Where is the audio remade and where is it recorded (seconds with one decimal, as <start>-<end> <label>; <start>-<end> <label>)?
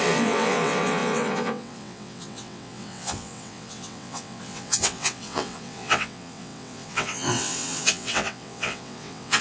0.0-9.4 remade